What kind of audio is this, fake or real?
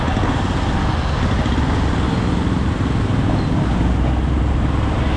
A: real